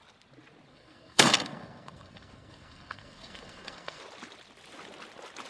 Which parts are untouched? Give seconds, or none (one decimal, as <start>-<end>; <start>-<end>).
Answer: 0.0-0.7; 4.0-5.5